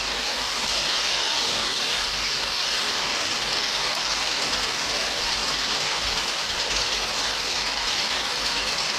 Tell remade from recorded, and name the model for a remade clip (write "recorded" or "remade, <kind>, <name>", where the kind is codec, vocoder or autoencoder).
remade, codec, DAC